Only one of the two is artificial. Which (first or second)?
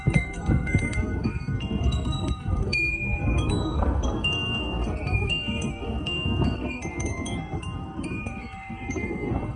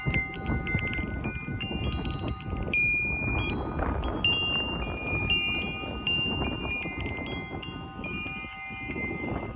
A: first